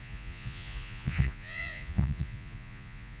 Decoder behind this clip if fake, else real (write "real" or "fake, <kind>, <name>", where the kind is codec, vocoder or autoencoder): fake, vocoder, Vocos